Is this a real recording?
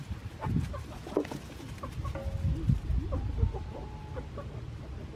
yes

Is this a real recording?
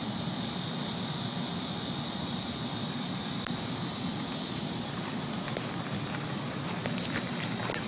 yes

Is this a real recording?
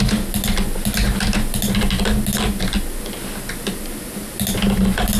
yes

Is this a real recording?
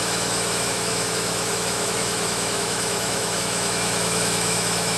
no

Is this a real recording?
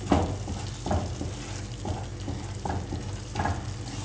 yes